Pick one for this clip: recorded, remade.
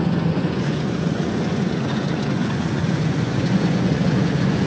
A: remade